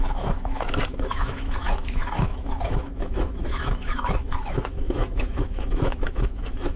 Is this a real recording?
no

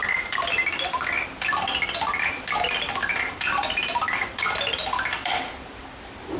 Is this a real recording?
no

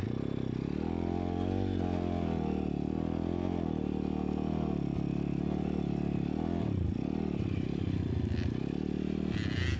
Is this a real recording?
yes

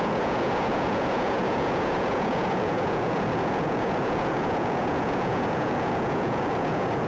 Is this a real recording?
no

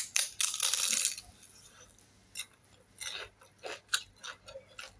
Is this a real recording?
yes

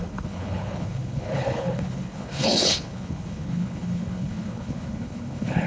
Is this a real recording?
no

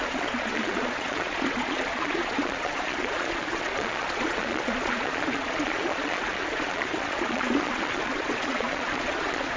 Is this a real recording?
no